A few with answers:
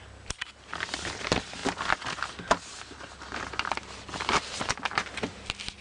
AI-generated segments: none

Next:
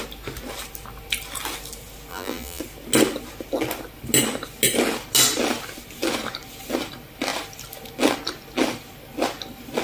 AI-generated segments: 2.1-2.6 (vocoder, BigVGAN v2)